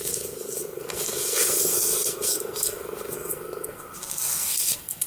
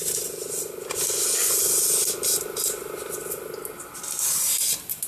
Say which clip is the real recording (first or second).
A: second